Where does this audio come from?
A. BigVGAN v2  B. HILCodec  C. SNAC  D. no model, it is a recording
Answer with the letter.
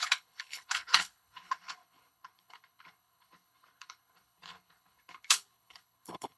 B